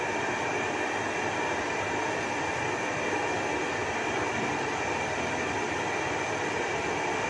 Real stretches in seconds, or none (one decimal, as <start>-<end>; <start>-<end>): 0.0-7.3